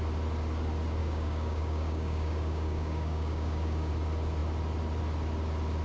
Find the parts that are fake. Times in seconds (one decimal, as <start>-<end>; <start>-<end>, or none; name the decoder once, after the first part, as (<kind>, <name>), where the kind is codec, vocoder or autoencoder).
1.0-3.9 (codec, DAC)